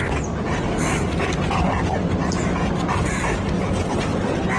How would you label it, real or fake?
real